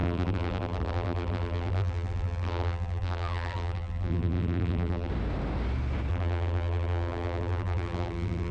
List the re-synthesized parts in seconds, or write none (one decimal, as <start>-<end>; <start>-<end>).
0.0-5.1; 6.1-8.5